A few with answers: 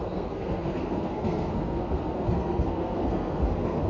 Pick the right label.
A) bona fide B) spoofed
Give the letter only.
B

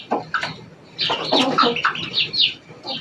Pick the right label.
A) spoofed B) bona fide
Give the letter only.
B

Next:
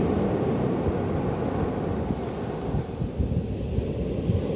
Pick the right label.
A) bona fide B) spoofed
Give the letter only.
A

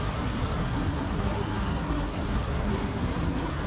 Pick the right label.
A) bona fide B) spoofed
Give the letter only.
B